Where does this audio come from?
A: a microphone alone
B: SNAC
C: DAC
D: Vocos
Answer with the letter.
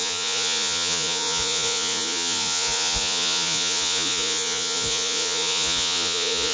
D